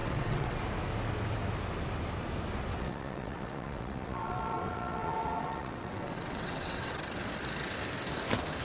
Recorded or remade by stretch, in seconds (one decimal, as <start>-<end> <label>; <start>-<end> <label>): 0.0-0.6 remade; 0.6-2.7 recorded; 2.7-6.9 remade; 6.9-8.6 recorded

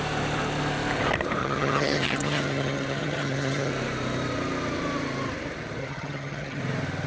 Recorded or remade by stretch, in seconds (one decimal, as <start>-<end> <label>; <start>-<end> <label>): 0.0-1.4 recorded; 1.4-3.7 remade; 3.7-5.8 recorded; 5.8-6.6 remade; 6.6-7.1 recorded

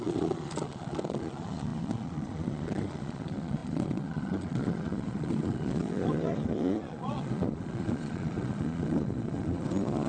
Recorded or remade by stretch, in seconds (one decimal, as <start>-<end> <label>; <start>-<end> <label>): 0.0-10.1 remade

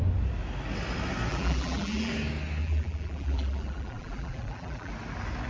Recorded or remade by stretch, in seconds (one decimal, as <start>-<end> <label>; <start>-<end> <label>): 0.0-1.3 recorded; 1.3-2.1 remade; 2.1-2.6 recorded; 2.6-4.9 remade; 4.9-5.5 recorded

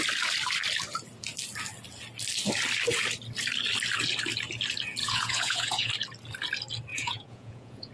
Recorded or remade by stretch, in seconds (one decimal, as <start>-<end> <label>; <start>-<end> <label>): 0.0-5.0 recorded; 5.0-5.9 remade; 5.9-6.9 recorded; 6.9-7.9 remade

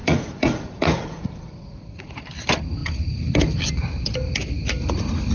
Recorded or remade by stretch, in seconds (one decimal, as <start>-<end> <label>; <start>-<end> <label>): 0.0-2.2 remade; 2.2-5.3 recorded